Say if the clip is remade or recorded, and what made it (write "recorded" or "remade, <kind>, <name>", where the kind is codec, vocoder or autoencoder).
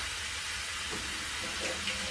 recorded